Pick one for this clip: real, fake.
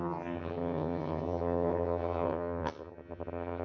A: fake